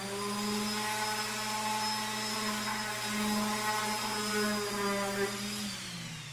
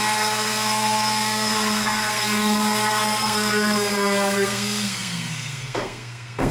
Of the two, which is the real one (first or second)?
first